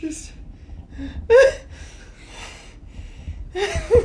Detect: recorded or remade recorded